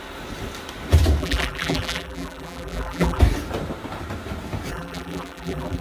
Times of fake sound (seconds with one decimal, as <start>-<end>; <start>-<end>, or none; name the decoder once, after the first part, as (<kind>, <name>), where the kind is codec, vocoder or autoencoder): 1.2-3.2 (vocoder, BigVGAN v2); 4.7-5.8